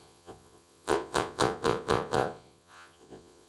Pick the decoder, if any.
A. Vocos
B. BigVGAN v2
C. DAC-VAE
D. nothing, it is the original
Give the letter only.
A